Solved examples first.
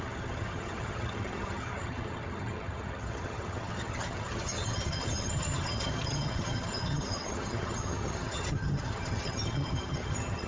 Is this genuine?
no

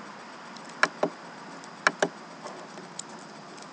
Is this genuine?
yes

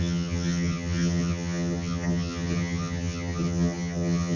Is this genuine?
no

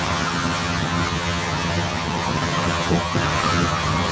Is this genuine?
no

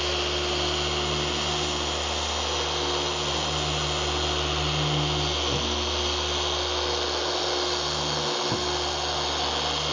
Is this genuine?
yes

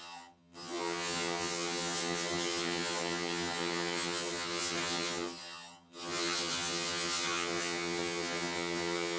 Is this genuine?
no